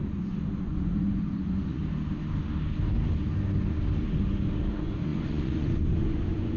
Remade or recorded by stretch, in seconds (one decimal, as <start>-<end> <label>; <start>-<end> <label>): 0.0-1.8 remade; 1.8-4.6 recorded; 4.6-6.6 remade

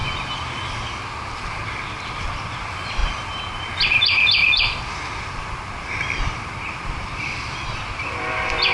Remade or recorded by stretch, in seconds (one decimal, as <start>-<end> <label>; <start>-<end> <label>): 0.0-1.0 recorded; 1.0-3.0 remade; 3.0-6.8 recorded; 6.8-8.7 remade

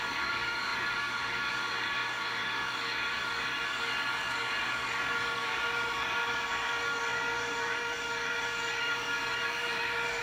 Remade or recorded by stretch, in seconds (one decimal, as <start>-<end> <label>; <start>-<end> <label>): 0.0-10.2 remade

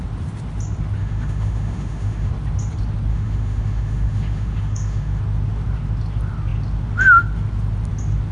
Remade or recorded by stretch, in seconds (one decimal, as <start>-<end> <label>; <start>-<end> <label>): 0.0-1.0 recorded; 1.0-2.3 remade; 2.3-3.1 recorded; 3.1-5.2 remade; 5.2-8.3 recorded